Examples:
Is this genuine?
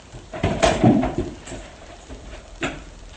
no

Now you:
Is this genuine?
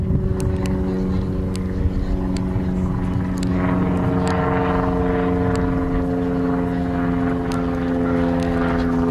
yes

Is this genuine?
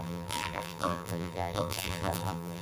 no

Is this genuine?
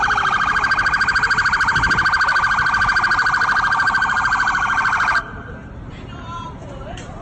yes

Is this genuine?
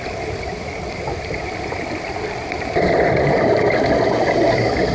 no